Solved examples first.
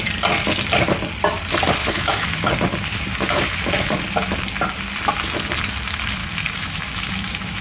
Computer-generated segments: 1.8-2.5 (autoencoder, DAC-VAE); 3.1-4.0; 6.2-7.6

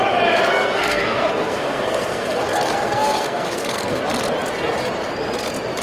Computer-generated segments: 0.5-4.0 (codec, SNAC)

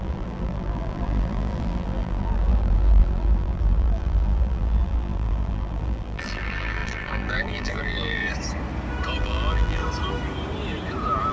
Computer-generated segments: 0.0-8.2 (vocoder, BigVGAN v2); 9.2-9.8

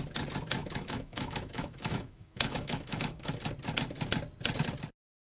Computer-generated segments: 0.6-3.3 (autoencoder, DAC-VAE)

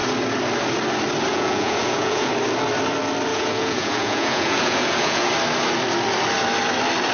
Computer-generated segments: 1.3-2.3 (vocoder, Vocos); 3.3-5.3